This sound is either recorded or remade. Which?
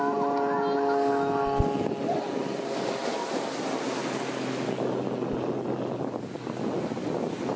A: recorded